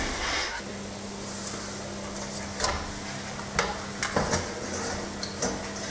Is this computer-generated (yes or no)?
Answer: no